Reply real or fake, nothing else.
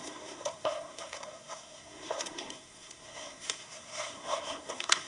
fake